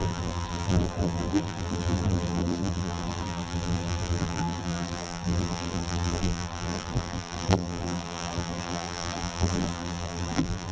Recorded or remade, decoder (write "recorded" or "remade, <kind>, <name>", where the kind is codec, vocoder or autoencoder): remade, vocoder, BigVGAN v2